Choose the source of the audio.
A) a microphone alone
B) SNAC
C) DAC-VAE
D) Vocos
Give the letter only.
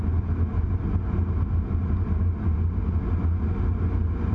A